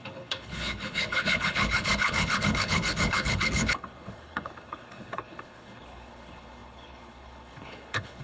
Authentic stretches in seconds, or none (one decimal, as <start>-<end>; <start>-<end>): none